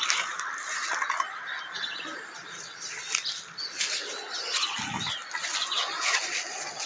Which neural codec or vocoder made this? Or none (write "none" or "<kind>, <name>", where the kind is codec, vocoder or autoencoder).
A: none